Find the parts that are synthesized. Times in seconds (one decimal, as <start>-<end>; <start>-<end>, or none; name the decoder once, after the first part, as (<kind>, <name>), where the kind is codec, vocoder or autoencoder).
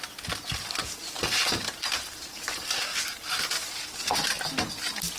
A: 2.9-3.5 (vocoder, BigVGAN v2)